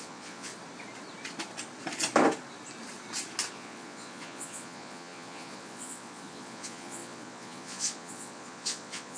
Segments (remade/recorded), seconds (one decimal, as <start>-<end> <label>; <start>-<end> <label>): 0.0-0.5 remade; 0.5-3.5 recorded; 3.5-9.2 remade

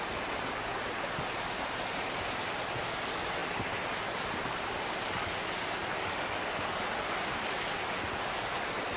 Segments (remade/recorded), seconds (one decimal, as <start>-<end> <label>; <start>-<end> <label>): 0.0-9.0 recorded

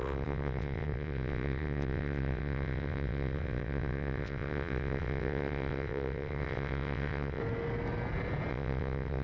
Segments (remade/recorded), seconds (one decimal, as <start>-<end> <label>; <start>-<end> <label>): 0.0-7.4 remade; 7.4-8.5 recorded; 8.5-9.2 remade

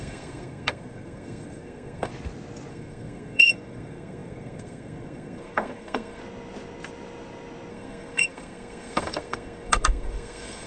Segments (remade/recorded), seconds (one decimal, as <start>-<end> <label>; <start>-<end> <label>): 0.0-2.1 remade; 2.1-2.7 recorded; 2.7-6.2 remade; 6.2-7.7 recorded; 7.7-10.7 remade